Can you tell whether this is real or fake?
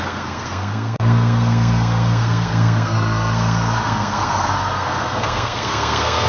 fake